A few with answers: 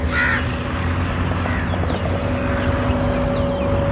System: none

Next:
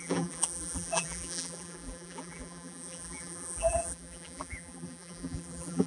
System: vocoder, BigVGAN v2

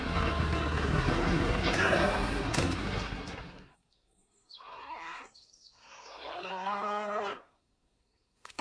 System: codec, SNAC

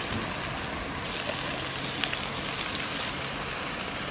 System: none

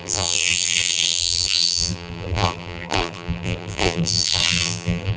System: vocoder, BigVGAN v2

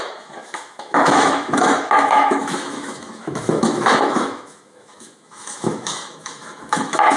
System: autoencoder, DAC-VAE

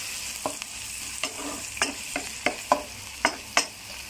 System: none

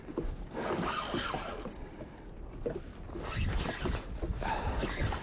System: none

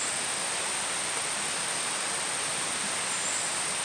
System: none